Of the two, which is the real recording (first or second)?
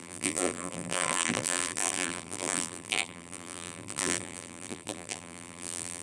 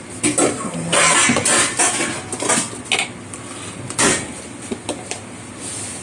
second